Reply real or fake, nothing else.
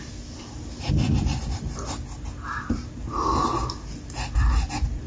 real